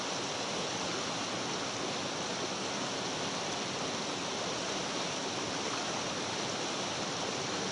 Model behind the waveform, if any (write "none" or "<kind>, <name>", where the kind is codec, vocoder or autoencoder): none